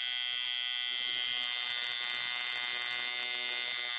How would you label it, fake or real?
real